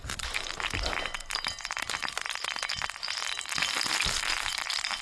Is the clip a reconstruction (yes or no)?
no